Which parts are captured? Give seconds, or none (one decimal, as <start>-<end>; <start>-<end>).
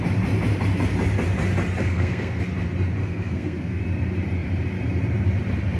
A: 0.0-1.8; 2.4-3.0; 3.8-5.8